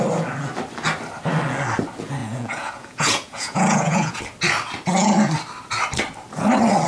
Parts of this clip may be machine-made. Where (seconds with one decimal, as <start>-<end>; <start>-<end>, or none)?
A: 2.2-4.2